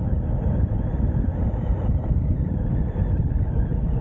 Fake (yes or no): yes